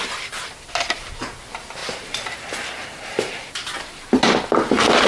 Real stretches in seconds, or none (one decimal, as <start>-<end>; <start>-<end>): 0.0-1.8; 3.5-5.1